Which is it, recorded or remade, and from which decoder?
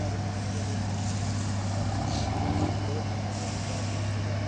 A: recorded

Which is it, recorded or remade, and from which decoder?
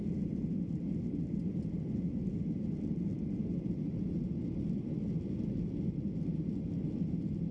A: recorded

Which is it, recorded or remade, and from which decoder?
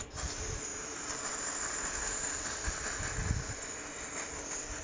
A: recorded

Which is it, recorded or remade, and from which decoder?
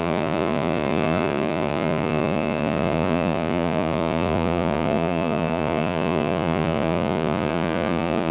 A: remade, vocoder, Vocos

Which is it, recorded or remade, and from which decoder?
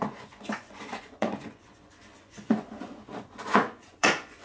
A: remade, vocoder, Vocos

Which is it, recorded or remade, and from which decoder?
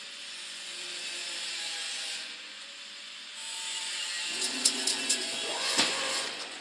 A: remade, vocoder, Vocos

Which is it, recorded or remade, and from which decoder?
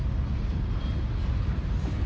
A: recorded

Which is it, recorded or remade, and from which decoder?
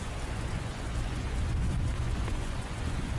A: remade, vocoder, Vocos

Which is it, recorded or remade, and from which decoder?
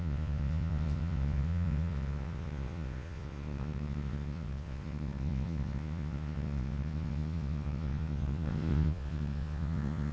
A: remade, vocoder, Vocos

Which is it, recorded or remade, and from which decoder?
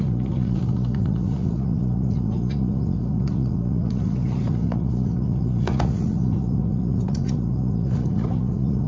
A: remade, vocoder, Vocos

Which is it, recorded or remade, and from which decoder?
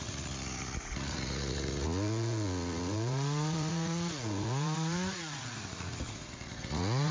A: remade, vocoder, Vocos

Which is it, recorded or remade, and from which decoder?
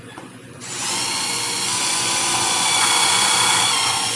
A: remade, vocoder, Vocos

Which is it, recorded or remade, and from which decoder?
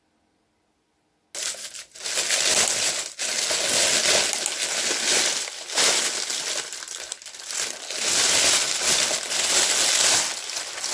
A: recorded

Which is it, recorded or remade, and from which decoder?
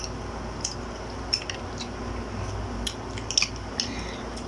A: recorded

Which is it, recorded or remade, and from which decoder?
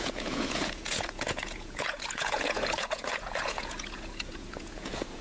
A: remade, vocoder, Vocos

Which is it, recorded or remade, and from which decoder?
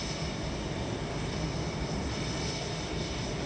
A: recorded